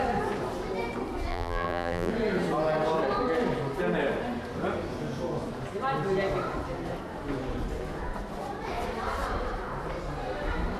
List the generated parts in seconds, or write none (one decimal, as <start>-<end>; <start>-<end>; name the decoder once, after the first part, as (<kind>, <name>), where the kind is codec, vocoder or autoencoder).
1.3-2.1 (vocoder, BigVGAN v2)